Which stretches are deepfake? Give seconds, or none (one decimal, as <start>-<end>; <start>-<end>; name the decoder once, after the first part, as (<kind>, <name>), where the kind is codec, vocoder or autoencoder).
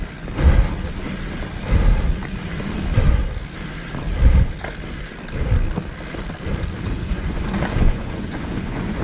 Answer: 7.0-9.0 (vocoder, Vocos)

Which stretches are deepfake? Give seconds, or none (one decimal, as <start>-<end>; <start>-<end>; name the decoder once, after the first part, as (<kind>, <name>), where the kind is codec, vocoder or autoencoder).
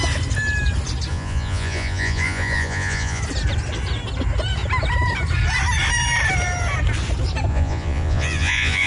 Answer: 1.1-3.2 (vocoder, Vocos); 7.5-8.9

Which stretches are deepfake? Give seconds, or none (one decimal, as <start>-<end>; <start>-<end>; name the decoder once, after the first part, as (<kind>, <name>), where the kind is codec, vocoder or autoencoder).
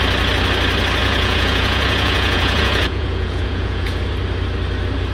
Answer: 1.0-4.1 (vocoder, Vocos)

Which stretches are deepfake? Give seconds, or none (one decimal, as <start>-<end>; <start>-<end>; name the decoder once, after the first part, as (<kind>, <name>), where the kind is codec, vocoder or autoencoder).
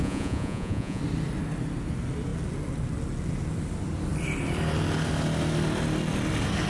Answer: 0.0-1.0 (vocoder, Vocos)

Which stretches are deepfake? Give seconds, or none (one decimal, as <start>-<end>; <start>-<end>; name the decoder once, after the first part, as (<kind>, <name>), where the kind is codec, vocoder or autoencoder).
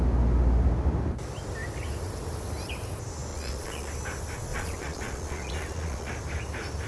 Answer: 3.3-3.9 (vocoder, Vocos); 4.5-6.1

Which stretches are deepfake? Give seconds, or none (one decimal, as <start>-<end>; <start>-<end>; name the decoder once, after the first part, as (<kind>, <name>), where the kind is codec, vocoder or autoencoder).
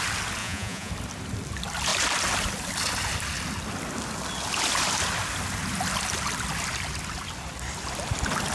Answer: 0.4-0.9 (vocoder, Vocos)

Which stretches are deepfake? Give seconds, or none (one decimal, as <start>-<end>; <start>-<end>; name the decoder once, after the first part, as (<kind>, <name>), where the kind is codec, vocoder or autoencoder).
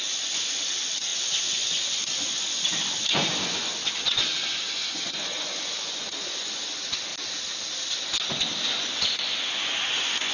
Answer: 0.0-7.1 (vocoder, Vocos); 8.6-10.3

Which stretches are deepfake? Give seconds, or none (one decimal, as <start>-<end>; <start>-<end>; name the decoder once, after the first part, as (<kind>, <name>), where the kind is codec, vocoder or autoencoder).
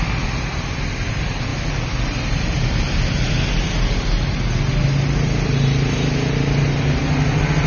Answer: none